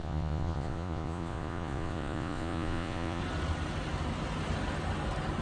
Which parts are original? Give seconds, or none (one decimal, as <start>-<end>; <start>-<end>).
3.2-5.4